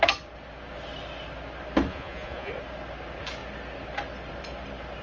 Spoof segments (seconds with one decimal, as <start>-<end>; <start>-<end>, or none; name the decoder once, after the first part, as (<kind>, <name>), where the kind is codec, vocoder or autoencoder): 1.9-2.5 (vocoder, Vocos)